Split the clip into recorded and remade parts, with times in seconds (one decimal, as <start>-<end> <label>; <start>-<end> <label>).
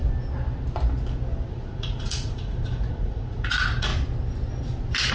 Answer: 0.0-1.5 recorded; 1.5-3.9 remade; 3.9-5.1 recorded